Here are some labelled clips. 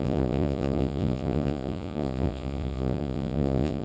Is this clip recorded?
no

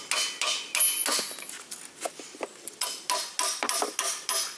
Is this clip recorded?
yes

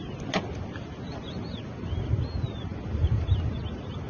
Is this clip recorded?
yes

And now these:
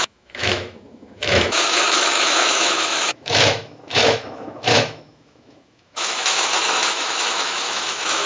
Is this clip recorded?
no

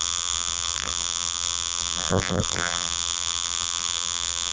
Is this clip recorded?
no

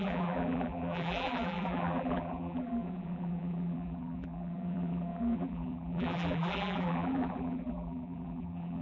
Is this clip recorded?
no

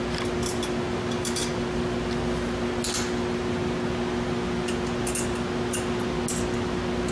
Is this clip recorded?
yes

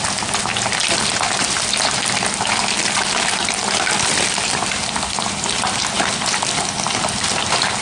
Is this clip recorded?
yes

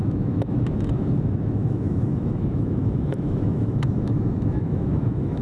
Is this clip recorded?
no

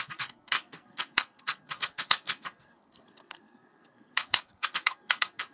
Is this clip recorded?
no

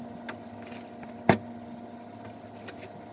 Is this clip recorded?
yes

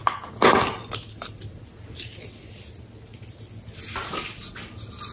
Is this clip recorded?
yes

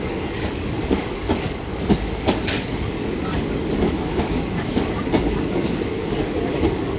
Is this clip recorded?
no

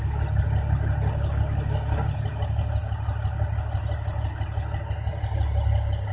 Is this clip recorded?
yes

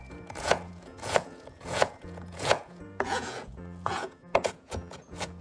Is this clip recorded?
no